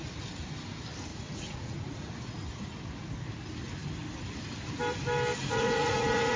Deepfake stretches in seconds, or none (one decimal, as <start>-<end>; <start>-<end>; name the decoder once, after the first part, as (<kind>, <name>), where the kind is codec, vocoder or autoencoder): 1.1-2.1 (vocoder, Vocos); 5.4-6.4